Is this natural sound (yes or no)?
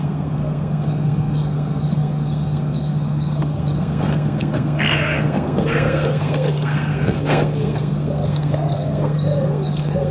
no